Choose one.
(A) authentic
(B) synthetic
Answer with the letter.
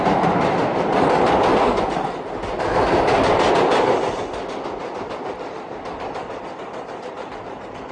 A